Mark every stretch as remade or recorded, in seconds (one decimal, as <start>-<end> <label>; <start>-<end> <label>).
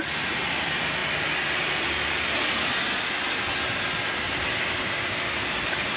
0.0-6.0 recorded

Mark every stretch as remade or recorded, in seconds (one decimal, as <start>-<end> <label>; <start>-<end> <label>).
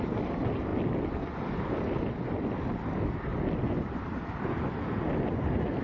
0.0-3.3 recorded; 3.3-4.6 remade; 4.6-5.8 recorded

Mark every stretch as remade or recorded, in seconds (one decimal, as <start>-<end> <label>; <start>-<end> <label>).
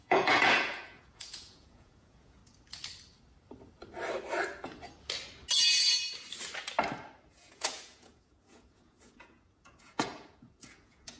0.0-2.4 remade; 2.4-7.3 recorded; 7.3-11.2 remade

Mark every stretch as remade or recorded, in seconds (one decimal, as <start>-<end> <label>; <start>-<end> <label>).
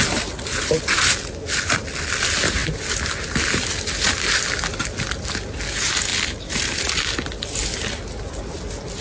0.0-9.0 recorded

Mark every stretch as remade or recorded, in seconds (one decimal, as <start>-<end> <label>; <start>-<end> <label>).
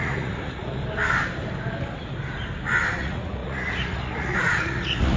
0.0-0.8 remade; 0.8-2.9 recorded; 2.9-5.2 remade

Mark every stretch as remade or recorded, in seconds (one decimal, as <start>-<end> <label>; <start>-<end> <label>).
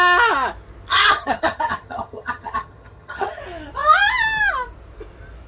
0.0-0.9 recorded; 0.9-3.4 remade; 3.4-5.5 recorded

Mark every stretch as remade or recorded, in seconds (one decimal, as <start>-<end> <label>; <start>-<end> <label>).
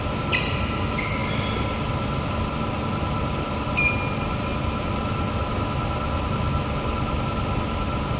0.0-8.2 recorded